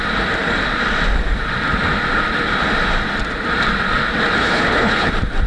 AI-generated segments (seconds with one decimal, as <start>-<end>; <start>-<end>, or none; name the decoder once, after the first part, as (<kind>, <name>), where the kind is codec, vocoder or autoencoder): 4.4-5.1 (codec, HILCodec)